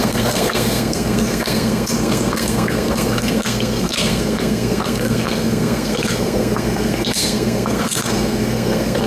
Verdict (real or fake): fake